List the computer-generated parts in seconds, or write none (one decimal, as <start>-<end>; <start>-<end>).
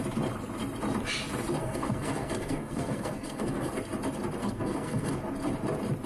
1.6-3.7; 4.4-5.2